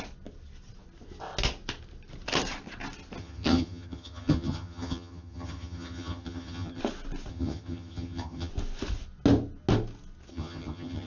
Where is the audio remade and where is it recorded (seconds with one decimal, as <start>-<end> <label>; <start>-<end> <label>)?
0.0-3.2 recorded; 3.2-6.8 remade; 6.8-7.3 recorded; 7.3-8.5 remade; 8.5-10.3 recorded; 10.3-11.1 remade